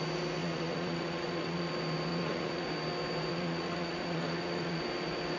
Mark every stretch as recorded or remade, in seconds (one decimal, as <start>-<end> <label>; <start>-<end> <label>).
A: 0.0-0.4 recorded; 0.4-1.7 remade; 1.7-2.1 recorded; 2.1-2.7 remade; 2.7-3.3 recorded; 3.3-4.8 remade; 4.8-5.4 recorded